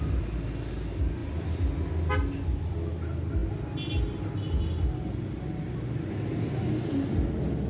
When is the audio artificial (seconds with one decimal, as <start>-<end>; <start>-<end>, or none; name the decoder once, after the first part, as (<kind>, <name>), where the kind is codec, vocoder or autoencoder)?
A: none